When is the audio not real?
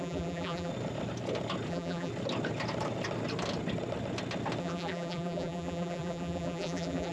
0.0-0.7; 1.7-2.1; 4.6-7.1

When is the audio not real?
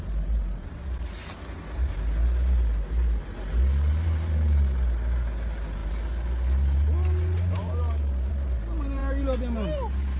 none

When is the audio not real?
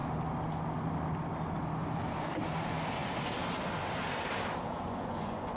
4.7-5.6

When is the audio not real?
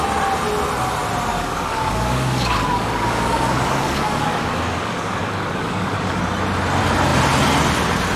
1.3-6.2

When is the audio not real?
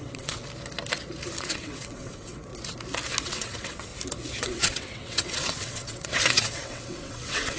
0.0-0.4; 1.4-2.5; 3.2-3.9; 4.4-7.6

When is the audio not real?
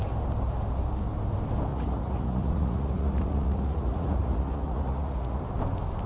1.7-5.4